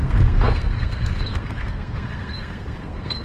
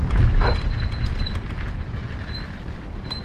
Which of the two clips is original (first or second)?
second